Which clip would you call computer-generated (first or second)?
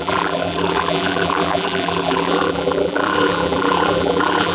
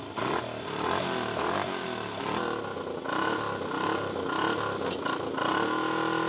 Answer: first